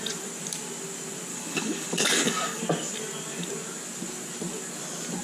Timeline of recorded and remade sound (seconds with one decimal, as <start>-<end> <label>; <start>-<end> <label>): 0.0-1.3 recorded; 1.3-2.6 remade; 2.6-5.2 recorded